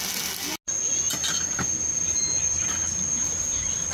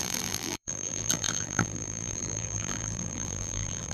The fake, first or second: second